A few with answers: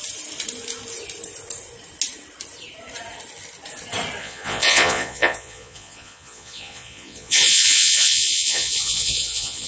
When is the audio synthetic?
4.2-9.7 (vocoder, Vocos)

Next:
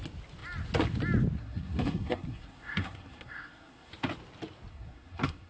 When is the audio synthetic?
1.4-3.9 (codec, SNAC); 4.7-5.5

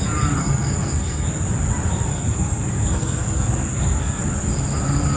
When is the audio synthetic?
0.4-1.4 (codec, SNAC); 2.1-4.2